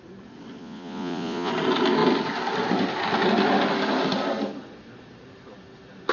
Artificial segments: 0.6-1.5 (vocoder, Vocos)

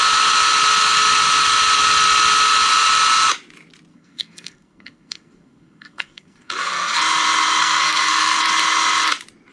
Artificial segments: 3.9-7.0 (codec, SNAC); 7.6-8.4